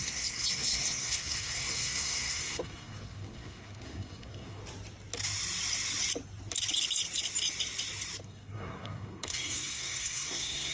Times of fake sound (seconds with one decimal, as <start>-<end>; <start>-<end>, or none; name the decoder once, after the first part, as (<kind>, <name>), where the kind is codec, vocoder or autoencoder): 0.0-4.6 (codec, SNAC); 8.2-10.7